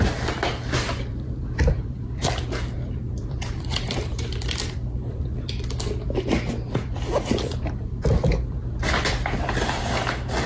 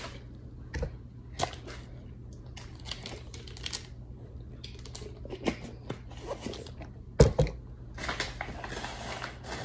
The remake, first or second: first